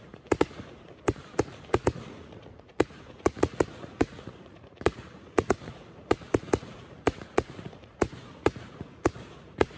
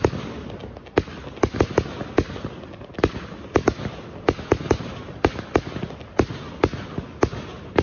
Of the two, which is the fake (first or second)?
first